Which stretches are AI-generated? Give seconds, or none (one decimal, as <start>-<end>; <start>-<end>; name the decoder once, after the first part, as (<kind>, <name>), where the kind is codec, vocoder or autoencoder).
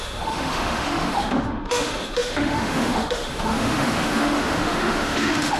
0.0-5.6 (autoencoder, DAC-VAE)